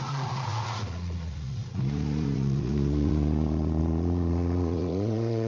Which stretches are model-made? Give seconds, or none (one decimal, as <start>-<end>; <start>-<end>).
0.0-5.5